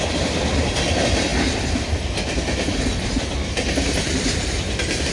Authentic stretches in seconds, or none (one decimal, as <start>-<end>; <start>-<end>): none